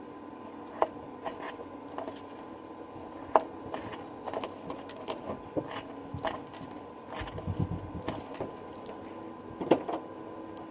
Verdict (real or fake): real